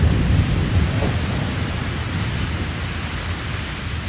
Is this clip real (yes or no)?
yes